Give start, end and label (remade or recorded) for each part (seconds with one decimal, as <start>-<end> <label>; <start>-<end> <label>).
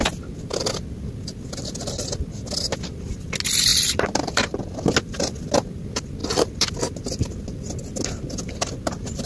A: 0.0-3.7 recorded; 3.7-4.7 remade; 4.7-6.2 recorded; 6.2-6.8 remade; 6.8-9.3 recorded